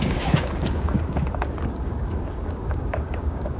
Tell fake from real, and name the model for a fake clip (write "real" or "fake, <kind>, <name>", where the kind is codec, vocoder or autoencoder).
fake, codec, DAC